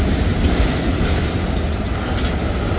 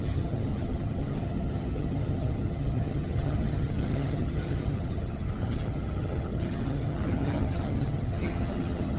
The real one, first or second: first